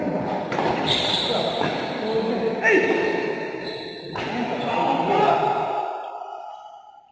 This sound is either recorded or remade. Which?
recorded